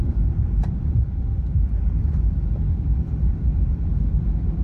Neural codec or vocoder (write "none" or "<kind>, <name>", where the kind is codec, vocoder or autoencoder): vocoder, BigVGAN v2